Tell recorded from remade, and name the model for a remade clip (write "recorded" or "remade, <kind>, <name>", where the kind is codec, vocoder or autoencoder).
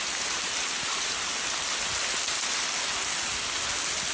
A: recorded